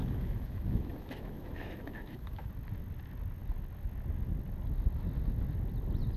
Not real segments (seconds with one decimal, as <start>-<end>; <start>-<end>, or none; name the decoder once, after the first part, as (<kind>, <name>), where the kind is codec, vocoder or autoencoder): 0.0-2.5 (autoencoder, DAC-VAE)